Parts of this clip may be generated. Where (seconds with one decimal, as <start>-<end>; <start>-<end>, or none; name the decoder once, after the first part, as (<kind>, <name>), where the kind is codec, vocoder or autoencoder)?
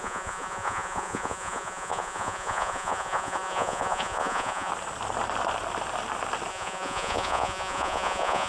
0.0-4.7 (vocoder, Vocos); 6.5-8.5